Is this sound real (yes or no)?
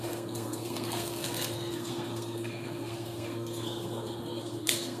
no